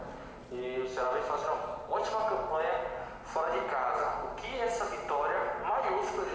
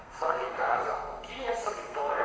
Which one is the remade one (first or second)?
second